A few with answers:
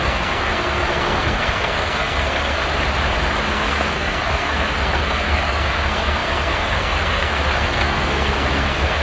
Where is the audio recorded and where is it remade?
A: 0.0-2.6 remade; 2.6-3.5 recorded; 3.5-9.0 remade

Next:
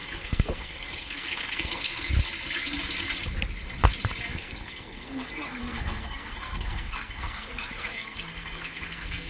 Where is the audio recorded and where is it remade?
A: 0.0-2.1 remade; 2.1-4.3 recorded; 4.3-9.3 remade

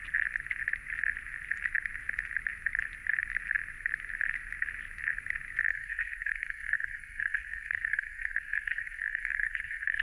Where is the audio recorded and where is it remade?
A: 0.0-5.7 recorded; 5.7-10.0 remade